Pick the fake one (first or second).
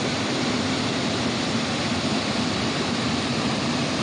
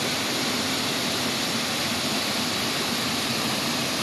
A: first